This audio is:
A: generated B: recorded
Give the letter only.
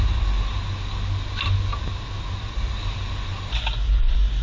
B